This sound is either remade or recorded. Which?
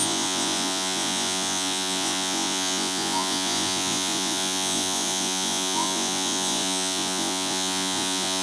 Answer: remade